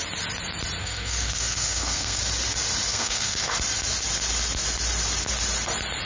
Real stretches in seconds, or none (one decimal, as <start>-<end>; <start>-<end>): 0.0-0.8; 2.2-2.9; 3.5-6.1

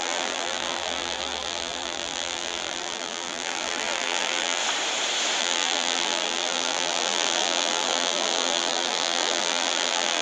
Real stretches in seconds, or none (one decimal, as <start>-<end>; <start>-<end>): 4.6-5.4

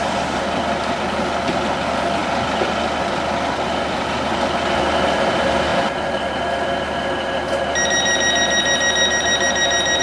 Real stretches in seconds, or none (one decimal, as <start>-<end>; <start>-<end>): 0.0-10.0